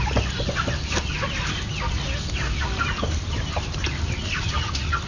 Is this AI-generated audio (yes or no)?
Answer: no